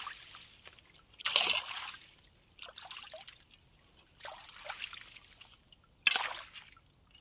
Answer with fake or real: real